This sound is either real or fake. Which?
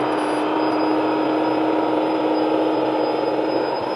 real